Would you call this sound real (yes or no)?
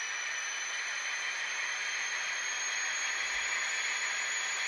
yes